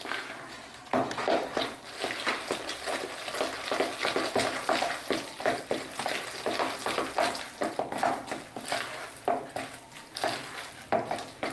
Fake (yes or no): no